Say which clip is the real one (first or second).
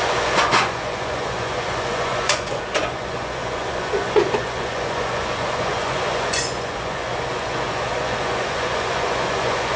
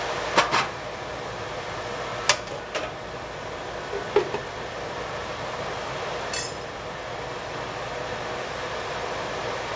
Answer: second